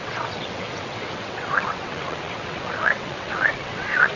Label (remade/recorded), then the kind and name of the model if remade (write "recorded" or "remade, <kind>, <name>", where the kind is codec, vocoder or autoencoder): remade, vocoder, WaveNeXt